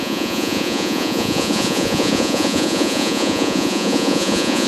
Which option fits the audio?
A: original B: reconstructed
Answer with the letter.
B